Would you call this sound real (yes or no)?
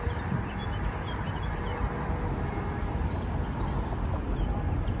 no